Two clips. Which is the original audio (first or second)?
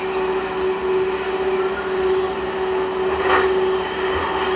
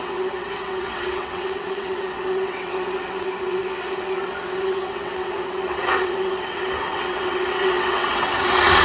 first